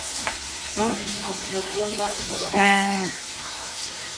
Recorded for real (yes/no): no